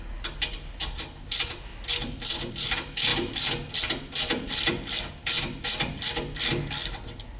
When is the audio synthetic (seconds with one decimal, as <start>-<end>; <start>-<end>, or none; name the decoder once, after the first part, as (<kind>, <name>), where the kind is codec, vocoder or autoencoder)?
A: none